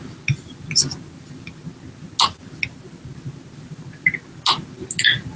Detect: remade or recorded recorded